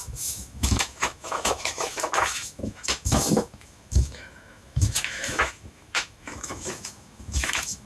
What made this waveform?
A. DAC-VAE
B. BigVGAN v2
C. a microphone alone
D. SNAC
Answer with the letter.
A